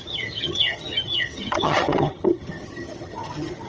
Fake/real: fake